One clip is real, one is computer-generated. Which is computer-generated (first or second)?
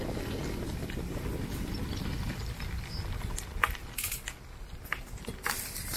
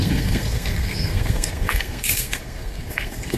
second